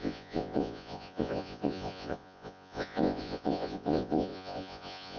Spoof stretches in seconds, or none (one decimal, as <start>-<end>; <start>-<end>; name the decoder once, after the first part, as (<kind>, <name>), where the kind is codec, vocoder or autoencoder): 0.0-5.2 (vocoder, Vocos)